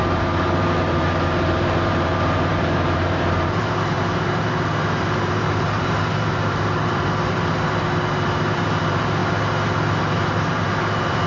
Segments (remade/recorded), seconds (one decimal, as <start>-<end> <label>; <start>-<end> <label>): 0.0-9.2 remade; 9.2-10.0 recorded; 10.0-11.3 remade